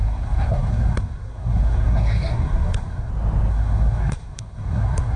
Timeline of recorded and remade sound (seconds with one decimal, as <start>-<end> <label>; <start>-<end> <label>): 0.0-3.1 remade; 3.1-3.5 recorded; 3.5-5.2 remade